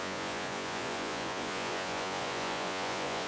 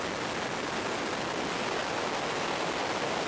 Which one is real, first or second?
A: second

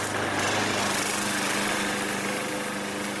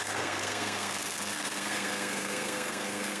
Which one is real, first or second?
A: first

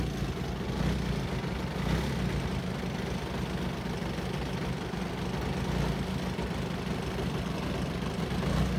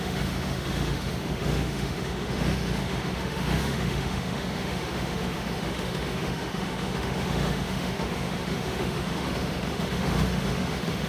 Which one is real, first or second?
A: first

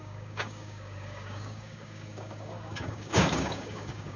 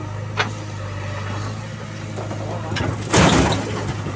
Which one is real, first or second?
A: second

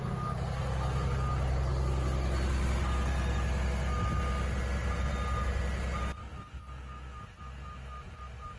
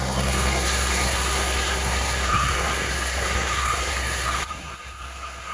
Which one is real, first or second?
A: first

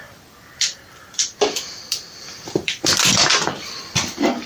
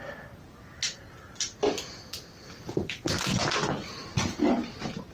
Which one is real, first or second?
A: second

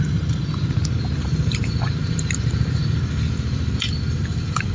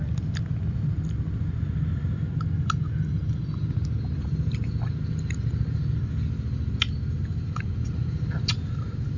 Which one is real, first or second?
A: second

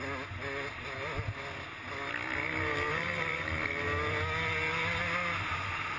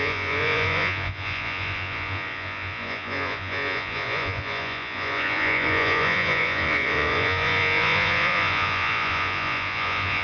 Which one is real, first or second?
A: first